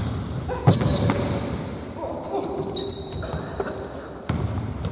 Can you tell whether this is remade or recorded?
recorded